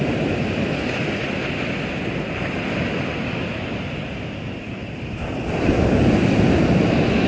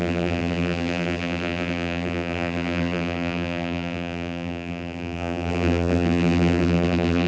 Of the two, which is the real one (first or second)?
first